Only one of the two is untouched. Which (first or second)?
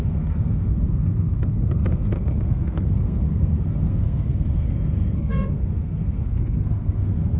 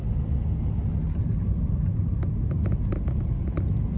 second